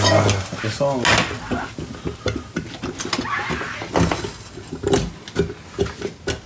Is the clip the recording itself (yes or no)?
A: yes